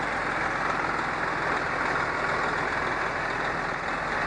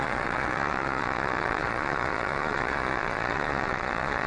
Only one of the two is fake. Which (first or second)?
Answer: second